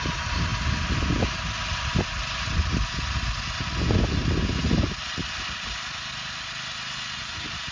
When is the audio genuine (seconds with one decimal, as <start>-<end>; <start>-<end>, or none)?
0.0-7.7